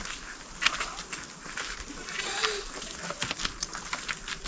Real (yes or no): yes